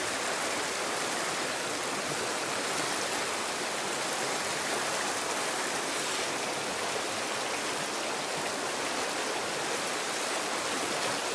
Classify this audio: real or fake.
real